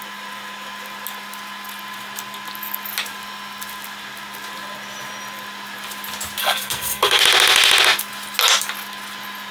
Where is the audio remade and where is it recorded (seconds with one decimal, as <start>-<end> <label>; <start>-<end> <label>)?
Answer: 0.0-6.4 recorded; 6.4-7.2 remade; 7.2-9.5 recorded